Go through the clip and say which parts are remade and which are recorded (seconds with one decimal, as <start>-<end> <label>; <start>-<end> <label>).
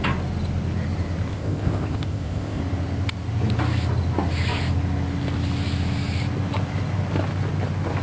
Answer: 0.0-1.3 recorded; 1.3-2.6 remade; 2.6-8.0 recorded